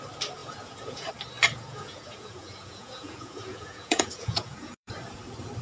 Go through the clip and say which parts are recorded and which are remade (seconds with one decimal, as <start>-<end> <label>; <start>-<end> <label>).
0.0-0.4 recorded; 0.4-1.1 remade; 1.1-1.5 recorded; 1.5-4.9 remade; 4.9-5.6 recorded